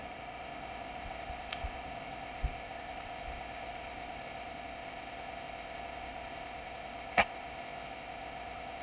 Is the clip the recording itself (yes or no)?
no